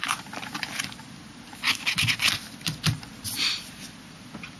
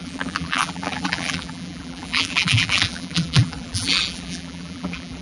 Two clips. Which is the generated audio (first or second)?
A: second